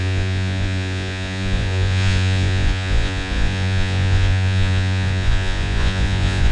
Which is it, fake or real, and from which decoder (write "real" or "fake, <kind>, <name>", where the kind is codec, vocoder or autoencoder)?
fake, vocoder, Vocos